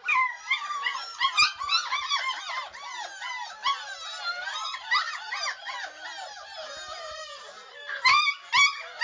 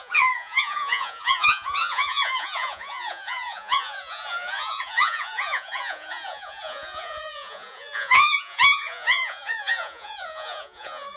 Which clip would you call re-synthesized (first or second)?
second